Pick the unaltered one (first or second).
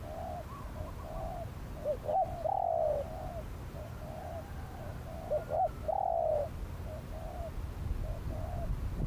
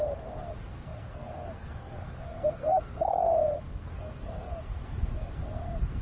first